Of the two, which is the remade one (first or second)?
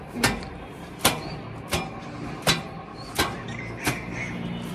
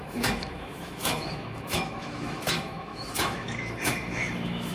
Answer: second